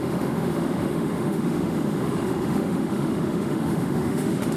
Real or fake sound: fake